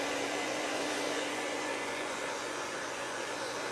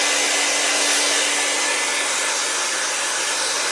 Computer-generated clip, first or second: first